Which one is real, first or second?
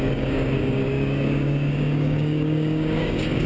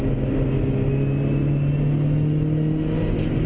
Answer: second